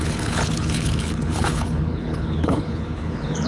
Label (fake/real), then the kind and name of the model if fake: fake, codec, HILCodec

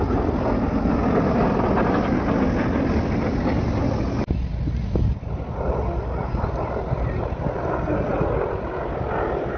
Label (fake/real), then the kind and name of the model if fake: real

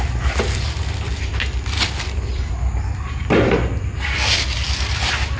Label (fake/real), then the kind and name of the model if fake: real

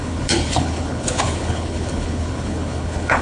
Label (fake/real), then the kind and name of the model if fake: fake, codec, HILCodec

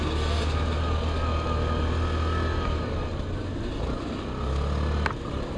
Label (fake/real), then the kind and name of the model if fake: real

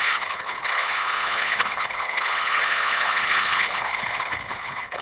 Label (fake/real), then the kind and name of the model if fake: fake, codec, HILCodec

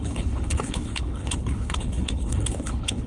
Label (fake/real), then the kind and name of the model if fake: fake, codec, HILCodec